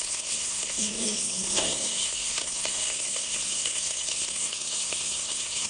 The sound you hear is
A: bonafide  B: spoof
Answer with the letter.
B